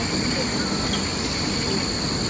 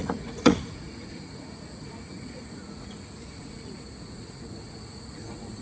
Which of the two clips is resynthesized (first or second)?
second